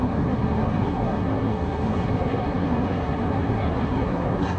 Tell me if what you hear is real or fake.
fake